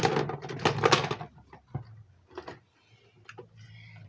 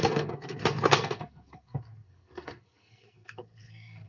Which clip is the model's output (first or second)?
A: second